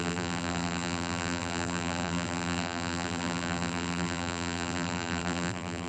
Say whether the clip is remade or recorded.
remade